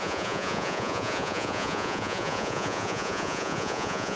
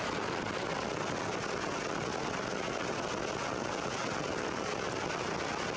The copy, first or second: first